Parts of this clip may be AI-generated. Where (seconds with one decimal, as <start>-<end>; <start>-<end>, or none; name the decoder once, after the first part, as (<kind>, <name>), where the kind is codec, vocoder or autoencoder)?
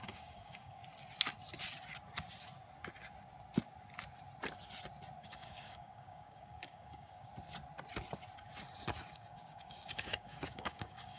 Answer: 0.0-0.8 (codec, DAC); 5.2-7.3; 9.1-11.2